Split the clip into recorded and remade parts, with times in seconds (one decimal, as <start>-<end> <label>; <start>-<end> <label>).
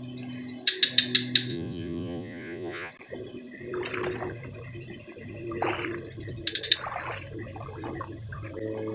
0.0-1.5 recorded; 1.5-2.9 remade; 2.9-8.9 recorded